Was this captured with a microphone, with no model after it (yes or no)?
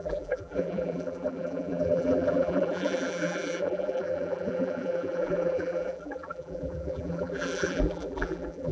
no